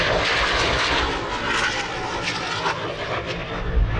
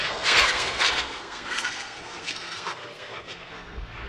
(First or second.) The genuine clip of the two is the first